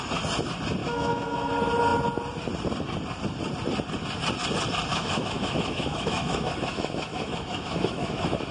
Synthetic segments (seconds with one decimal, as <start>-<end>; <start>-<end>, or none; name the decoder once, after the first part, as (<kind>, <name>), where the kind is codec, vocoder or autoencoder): 0.8-1.5 (autoencoder, DAC-VAE); 4.9-8.5